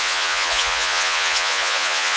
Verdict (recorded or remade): remade